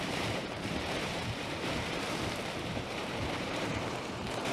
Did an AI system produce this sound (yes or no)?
yes